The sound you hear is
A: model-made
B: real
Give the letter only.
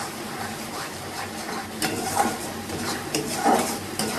A